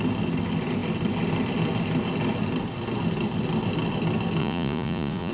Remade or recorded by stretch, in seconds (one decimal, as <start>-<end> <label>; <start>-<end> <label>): 0.0-4.4 recorded; 4.4-5.3 remade